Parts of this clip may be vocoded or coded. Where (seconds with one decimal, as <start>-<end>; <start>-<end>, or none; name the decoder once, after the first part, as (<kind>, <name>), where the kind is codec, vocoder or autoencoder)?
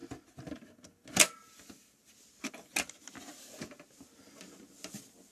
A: none